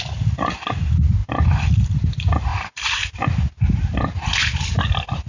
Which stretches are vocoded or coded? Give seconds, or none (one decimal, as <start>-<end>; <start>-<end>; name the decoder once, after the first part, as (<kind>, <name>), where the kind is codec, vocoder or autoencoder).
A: none